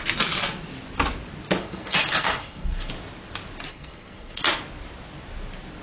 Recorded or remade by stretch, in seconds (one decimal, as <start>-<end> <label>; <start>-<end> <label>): 0.0-1.6 recorded; 1.6-2.9 remade; 2.9-3.7 recorded; 3.7-4.4 remade; 4.4-5.8 recorded